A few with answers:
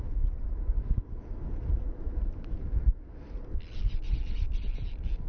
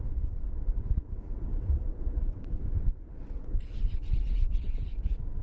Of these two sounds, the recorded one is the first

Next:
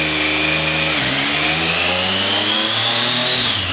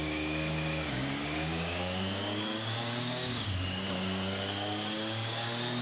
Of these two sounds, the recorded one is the first